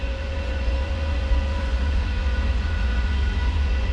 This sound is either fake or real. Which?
fake